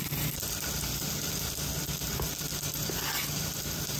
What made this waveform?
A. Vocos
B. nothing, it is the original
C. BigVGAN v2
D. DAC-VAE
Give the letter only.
B